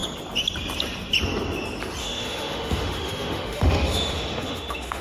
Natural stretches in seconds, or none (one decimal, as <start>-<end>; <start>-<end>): 0.0-2.0

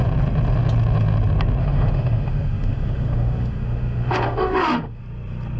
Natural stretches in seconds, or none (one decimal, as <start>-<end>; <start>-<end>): 0.0-1.6; 5.0-5.6

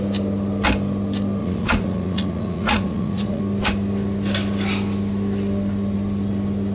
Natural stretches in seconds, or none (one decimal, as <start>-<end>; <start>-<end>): 0.0-1.4; 3.4-6.7